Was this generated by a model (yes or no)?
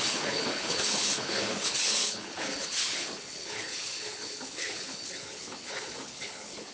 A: yes